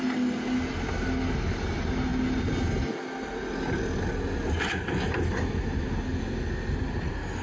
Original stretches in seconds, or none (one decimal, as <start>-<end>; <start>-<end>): 0.0-7.4